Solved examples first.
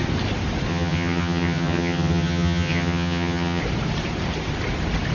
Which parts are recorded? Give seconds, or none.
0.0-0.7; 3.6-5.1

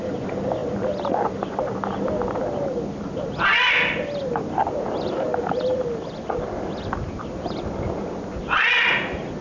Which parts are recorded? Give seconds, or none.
0.0-9.4

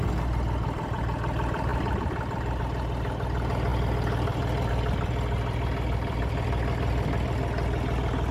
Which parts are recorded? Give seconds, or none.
0.0-8.3

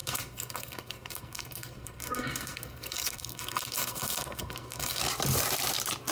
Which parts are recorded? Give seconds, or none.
5.0-6.1

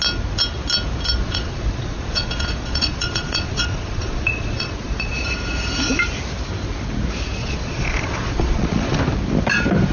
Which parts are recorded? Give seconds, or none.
0.0-1.2; 5.1-7.4; 9.0-9.9